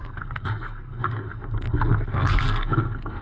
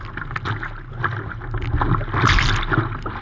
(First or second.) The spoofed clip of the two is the first